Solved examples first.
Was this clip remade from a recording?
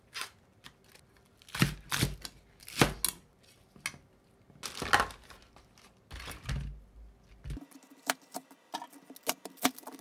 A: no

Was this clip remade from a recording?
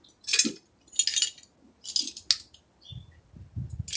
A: no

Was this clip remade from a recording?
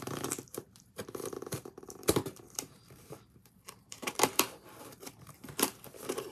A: yes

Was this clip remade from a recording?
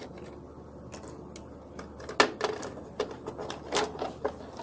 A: no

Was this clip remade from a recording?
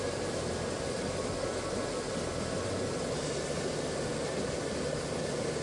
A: no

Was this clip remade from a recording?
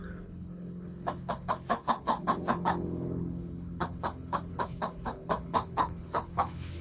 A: yes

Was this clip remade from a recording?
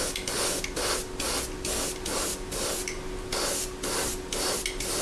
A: no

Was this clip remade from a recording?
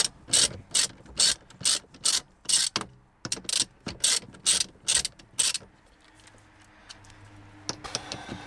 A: no